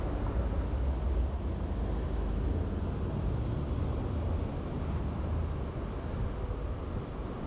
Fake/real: real